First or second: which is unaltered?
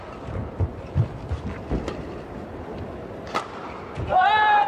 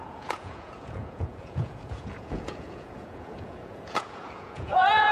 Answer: first